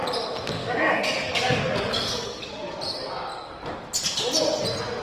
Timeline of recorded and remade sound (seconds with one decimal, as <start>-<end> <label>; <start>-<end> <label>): 0.0-0.6 recorded; 0.6-2.4 remade; 2.4-5.0 recorded